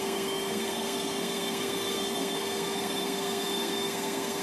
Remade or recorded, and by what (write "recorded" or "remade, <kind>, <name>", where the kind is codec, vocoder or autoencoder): remade, codec, SNAC